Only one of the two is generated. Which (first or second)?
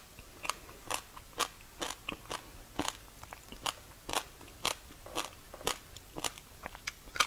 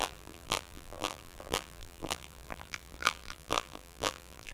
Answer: second